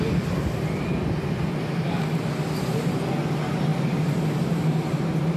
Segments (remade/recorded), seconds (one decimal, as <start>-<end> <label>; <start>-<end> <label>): 0.0-5.4 recorded